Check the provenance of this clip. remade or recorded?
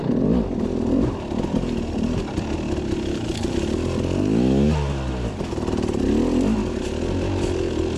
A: recorded